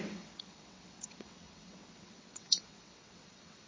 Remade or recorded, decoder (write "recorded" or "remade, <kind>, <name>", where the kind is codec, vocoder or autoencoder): remade, vocoder, WaveNeXt